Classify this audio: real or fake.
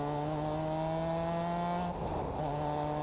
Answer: real